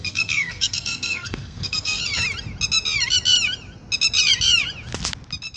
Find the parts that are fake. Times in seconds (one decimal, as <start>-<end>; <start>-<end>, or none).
0.0-2.0